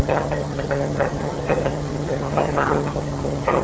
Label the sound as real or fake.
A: fake